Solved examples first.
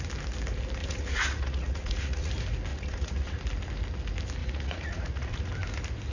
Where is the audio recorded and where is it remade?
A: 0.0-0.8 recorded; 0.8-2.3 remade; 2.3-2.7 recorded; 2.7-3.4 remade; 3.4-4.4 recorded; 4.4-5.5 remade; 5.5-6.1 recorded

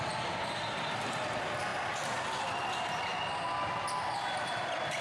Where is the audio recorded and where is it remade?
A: 0.0-5.0 recorded

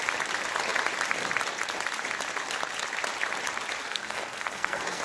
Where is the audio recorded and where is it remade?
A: 0.0-3.8 recorded; 3.8-5.0 remade